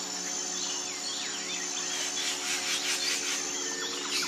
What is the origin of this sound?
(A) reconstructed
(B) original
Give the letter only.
B